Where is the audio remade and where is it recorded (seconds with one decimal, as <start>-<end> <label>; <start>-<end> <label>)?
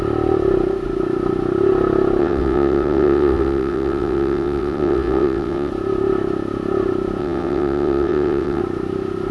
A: 0.0-2.2 recorded; 2.2-5.7 remade; 5.7-7.2 recorded; 7.2-8.6 remade; 8.6-9.3 recorded